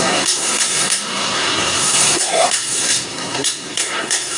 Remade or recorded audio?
remade